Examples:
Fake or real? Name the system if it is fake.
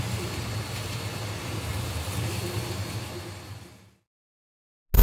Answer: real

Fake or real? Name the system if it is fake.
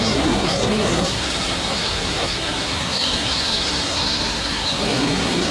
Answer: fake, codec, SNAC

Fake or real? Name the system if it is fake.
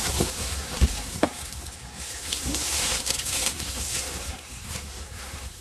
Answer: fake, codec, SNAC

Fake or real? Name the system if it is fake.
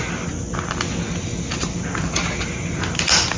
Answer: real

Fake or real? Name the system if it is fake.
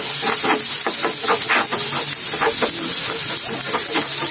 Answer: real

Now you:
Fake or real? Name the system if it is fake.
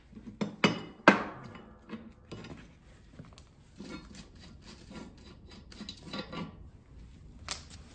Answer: real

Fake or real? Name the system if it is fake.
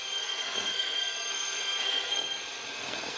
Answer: fake, codec, SNAC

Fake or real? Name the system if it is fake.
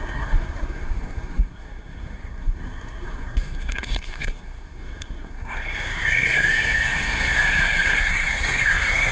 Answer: fake, codec, SNAC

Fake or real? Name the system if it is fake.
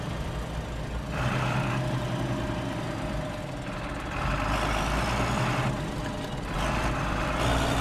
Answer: real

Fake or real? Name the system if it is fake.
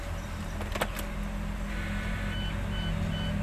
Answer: real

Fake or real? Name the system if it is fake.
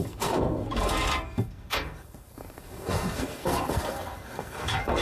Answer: fake, codec, SNAC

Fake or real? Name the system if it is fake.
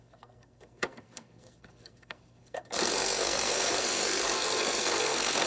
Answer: fake, codec, SNAC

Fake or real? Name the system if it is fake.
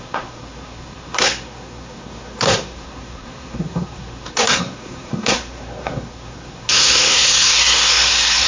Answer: fake, codec, SNAC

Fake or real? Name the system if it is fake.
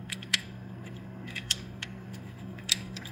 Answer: fake, codec, SNAC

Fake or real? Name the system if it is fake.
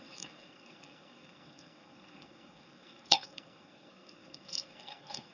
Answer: fake, codec, SNAC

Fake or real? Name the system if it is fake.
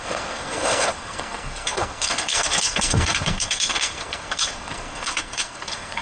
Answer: fake, codec, SNAC